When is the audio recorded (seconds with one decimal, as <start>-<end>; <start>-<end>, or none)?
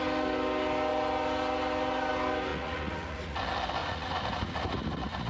0.0-2.5; 3.4-3.8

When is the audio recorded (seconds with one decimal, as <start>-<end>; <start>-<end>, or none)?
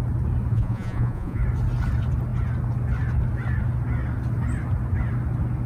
0.0-0.5; 1.4-5.7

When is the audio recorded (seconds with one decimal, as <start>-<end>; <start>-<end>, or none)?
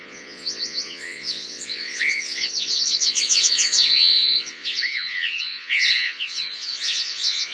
none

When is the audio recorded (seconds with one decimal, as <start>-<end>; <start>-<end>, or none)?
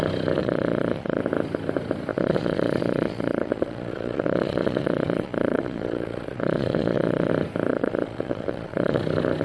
0.0-0.4; 1.2-2.1; 7.3-7.7; 9.0-9.4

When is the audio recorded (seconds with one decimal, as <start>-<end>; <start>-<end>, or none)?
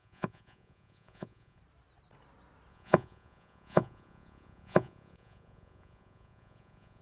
1.6-2.7